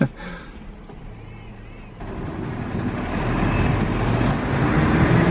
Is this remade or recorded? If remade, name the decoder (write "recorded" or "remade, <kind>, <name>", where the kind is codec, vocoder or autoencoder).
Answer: recorded